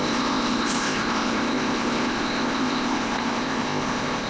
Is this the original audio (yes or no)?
no